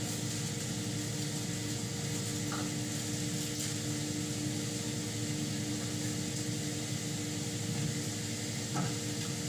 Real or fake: real